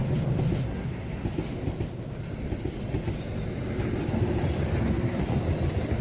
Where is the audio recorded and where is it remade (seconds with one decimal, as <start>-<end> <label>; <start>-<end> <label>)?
0.0-0.6 recorded; 0.6-1.2 remade; 1.2-4.8 recorded; 4.8-5.2 remade; 5.2-6.0 recorded